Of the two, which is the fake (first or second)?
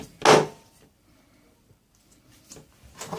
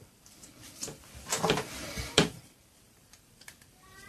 second